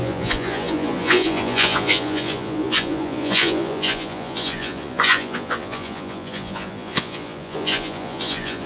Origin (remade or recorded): remade